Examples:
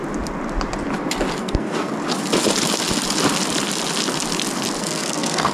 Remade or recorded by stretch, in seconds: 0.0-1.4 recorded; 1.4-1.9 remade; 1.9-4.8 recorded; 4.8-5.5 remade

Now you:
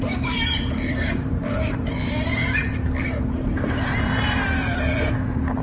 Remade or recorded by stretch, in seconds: 0.0-5.6 remade

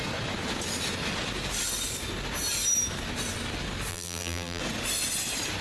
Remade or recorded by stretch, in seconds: 0.0-3.9 recorded; 3.9-4.6 remade; 4.6-5.6 recorded